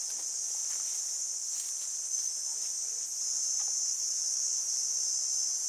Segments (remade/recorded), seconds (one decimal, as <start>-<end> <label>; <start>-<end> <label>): 0.0-5.7 recorded